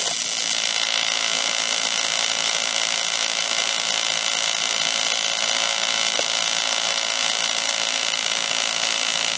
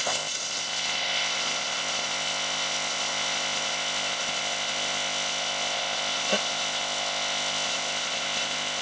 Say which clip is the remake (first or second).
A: second